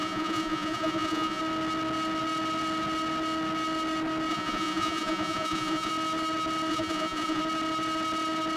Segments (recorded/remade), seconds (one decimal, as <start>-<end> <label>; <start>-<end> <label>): 0.0-1.4 remade; 1.4-4.3 recorded; 4.3-5.9 remade; 5.9-6.7 recorded; 6.7-7.4 remade; 7.4-8.6 recorded